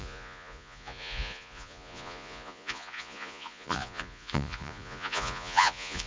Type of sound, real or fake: fake